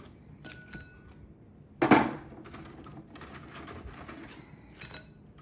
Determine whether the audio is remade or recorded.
recorded